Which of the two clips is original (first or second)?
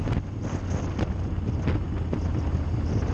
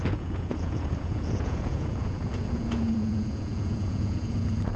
first